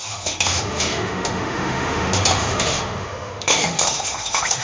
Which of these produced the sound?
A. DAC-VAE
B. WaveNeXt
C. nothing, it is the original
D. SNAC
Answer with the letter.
A